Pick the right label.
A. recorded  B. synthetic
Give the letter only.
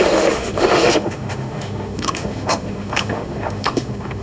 B